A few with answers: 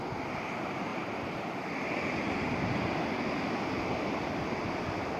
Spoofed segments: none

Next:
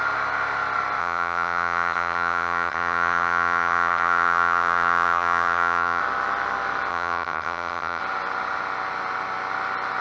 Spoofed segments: 1.0-6.0 (vocoder, HiFi-GAN); 6.9-8.0

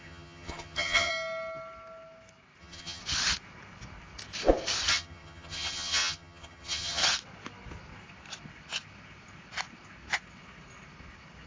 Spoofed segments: 0.0-1.1 (vocoder, HiFi-GAN); 2.6-3.0; 4.9-7.0

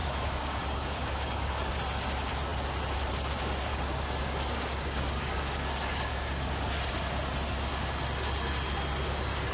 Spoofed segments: 0.0-1.7 (codec, DAC); 3.7-6.9